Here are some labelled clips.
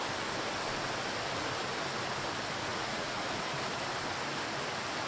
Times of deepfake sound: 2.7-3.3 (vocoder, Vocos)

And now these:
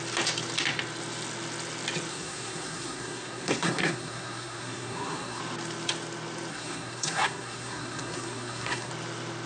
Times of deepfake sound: 2.1-5.4 (codec, SNAC); 6.5-8.9

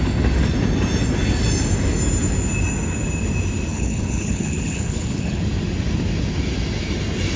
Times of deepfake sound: 3.7-5.4 (codec, HILCodec)

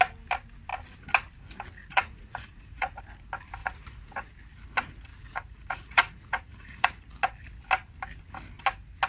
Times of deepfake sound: 1.8-3.0 (vocoder, Vocos); 3.6-4.3; 5.1-7.0

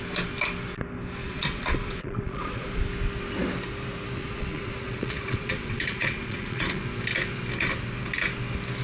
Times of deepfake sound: 1.2-2.8 (vocoder, Vocos); 4.2-6.8

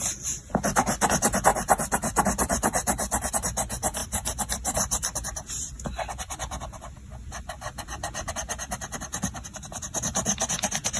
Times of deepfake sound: 1.5-3.3 (vocoder, BigVGAN v2); 4.0-8.3